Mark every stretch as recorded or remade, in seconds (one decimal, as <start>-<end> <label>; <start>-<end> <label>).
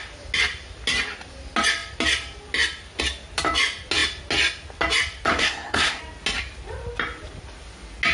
0.0-5.3 recorded; 5.3-6.0 remade; 6.0-8.1 recorded